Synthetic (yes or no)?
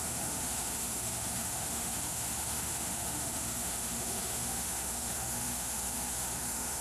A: yes